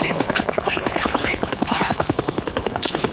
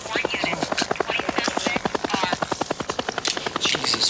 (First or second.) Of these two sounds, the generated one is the first